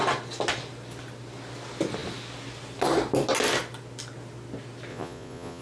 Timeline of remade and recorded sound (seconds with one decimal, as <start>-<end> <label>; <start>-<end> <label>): 0.0-4.9 recorded; 4.9-5.6 remade